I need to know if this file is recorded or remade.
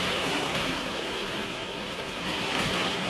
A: remade